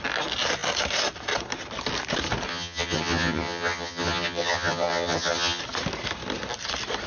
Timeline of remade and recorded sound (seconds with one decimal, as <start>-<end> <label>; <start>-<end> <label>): 0.0-2.5 recorded; 2.5-5.6 remade; 5.6-7.1 recorded